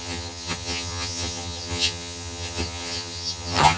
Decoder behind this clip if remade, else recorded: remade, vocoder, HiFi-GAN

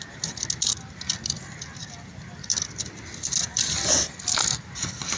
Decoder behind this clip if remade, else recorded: recorded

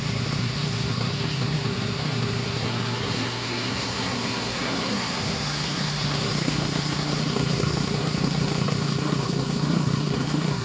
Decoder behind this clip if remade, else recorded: remade, codec, SNAC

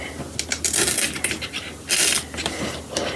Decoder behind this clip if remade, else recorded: recorded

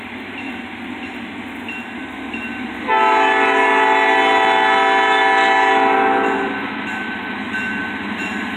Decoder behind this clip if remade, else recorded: recorded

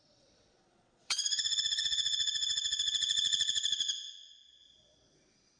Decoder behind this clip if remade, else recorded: remade, vocoder, Vocos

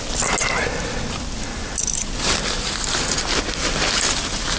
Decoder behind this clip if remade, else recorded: recorded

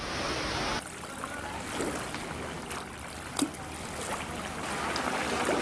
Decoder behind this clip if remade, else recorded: recorded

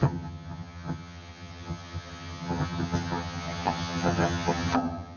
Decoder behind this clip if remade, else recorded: remade, vocoder, HiFi-GAN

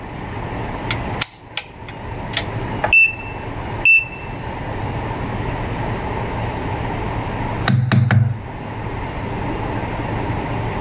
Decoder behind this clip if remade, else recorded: recorded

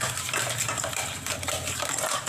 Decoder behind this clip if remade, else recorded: recorded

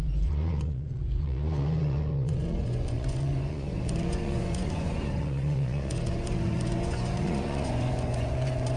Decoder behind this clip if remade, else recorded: remade, vocoder, Vocos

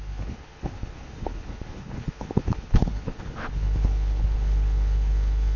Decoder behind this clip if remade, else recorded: remade, codec, HILCodec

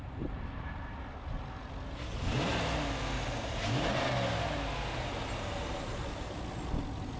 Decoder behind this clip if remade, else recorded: recorded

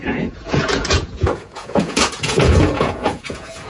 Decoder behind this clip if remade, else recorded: remade, vocoder, Vocos